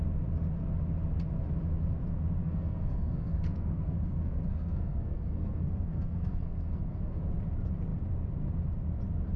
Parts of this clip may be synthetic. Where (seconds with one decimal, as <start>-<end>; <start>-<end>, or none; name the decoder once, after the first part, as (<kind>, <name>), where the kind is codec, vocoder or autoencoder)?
2.4-7.2 (codec, SNAC)